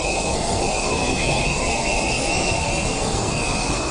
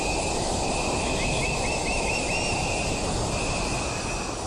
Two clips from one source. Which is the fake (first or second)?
first